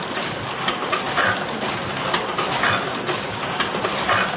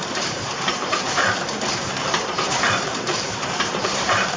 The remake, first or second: second